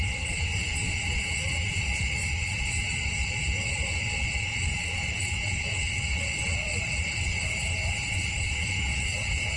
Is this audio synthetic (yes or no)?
yes